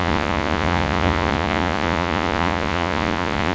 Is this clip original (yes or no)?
no